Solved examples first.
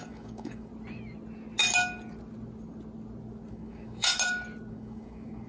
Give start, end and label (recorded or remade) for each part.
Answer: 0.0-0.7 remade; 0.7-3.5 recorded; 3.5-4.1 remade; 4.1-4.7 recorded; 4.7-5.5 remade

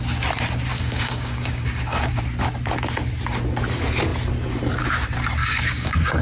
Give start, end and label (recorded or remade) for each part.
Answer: 0.0-0.7 recorded; 0.7-2.2 remade; 2.2-5.4 recorded; 5.4-6.2 remade

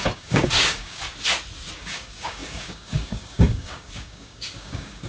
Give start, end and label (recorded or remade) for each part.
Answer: 0.0-1.0 remade; 1.0-1.8 recorded; 1.8-5.1 remade

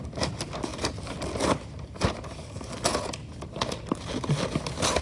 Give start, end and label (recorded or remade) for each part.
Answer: 0.0-5.0 recorded

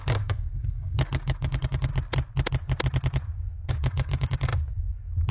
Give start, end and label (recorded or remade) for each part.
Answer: 0.0-1.9 remade; 1.9-3.7 recorded; 3.7-4.5 remade; 4.5-5.3 recorded

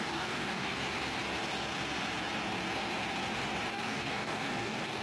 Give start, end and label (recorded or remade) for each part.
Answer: 0.0-0.7 remade; 0.7-3.7 recorded; 3.7-5.0 remade